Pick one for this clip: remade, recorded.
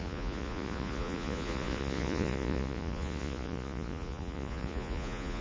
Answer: remade